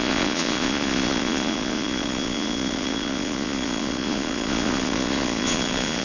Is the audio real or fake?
fake